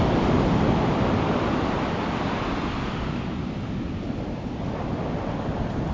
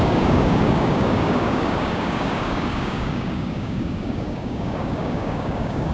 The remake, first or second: second